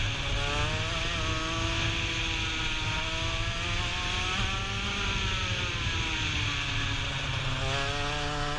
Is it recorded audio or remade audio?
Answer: recorded